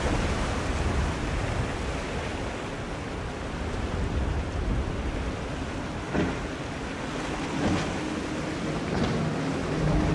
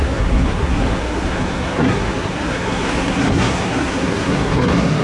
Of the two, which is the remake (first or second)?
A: second